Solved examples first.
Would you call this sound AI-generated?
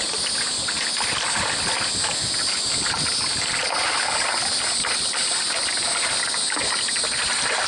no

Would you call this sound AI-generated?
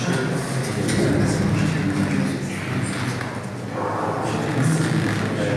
no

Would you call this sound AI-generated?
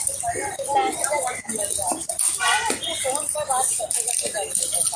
no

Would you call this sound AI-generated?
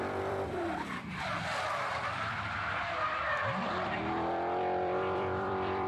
yes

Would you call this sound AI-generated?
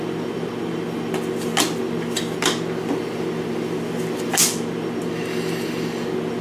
no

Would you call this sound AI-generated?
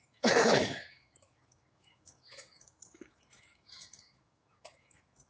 yes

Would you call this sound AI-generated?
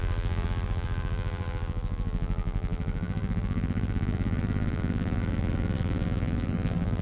yes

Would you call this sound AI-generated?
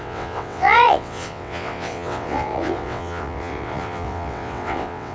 yes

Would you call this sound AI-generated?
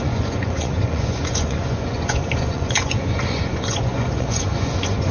yes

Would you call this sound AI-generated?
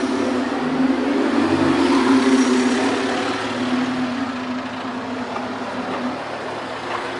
no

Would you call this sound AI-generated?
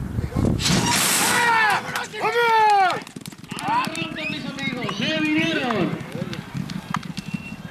no